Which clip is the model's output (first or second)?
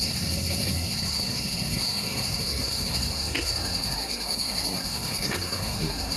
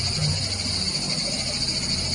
first